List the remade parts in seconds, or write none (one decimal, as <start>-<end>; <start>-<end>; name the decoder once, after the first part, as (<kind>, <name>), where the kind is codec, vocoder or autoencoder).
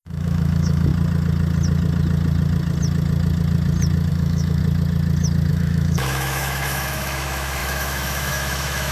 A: 0.0-0.9 (autoencoder, DAC-VAE); 4.1-4.6; 5.5-8.9